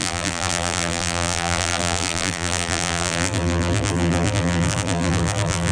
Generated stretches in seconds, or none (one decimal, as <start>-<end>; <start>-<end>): 0.0-5.7